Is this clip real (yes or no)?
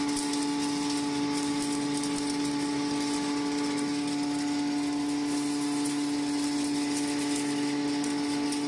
yes